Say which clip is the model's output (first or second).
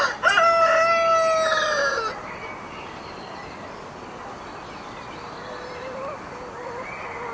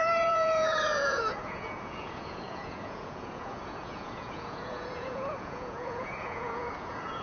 second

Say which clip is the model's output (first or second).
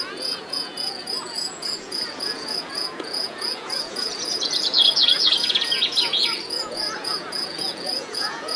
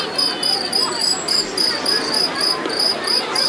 first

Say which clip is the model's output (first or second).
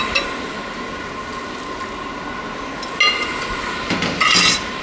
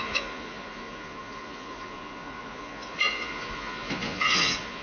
second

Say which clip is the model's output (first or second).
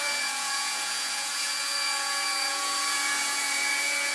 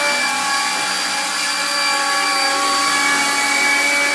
first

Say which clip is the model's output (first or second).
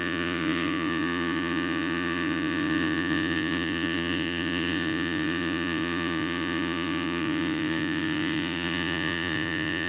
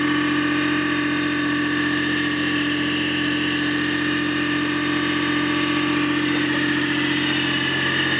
first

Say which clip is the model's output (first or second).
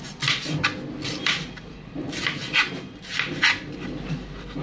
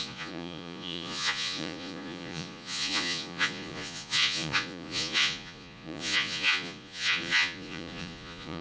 second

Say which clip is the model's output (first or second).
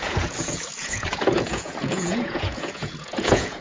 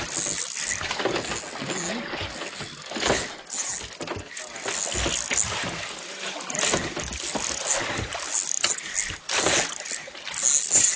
first